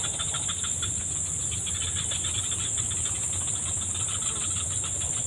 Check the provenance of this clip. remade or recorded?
recorded